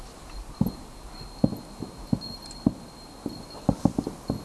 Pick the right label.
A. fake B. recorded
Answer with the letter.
B